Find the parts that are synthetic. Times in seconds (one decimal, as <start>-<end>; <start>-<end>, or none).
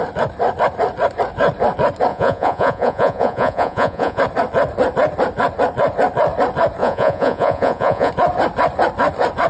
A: 2.1-4.2; 6.8-8.1